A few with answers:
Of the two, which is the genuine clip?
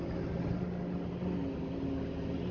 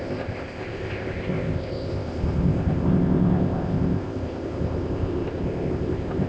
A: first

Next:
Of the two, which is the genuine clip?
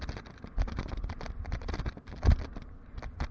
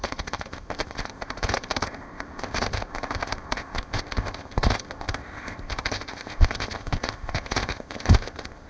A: first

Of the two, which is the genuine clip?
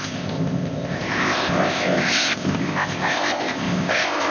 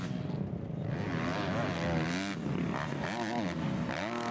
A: second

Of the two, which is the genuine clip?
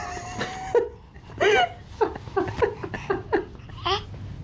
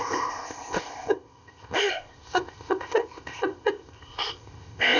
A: first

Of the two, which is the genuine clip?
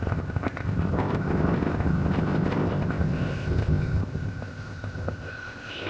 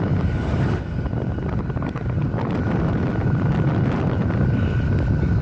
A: second